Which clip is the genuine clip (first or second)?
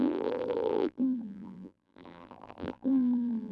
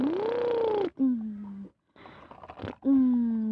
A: second